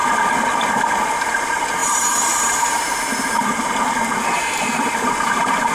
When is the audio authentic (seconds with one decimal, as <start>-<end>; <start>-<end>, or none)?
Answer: 0.0-0.7